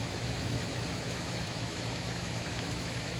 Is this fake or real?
fake